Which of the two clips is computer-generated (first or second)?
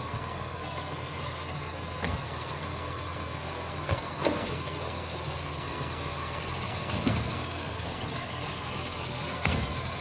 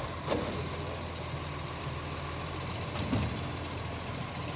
first